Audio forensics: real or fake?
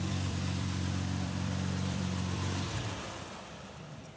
fake